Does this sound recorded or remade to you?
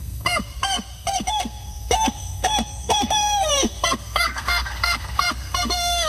remade